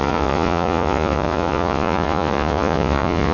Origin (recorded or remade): remade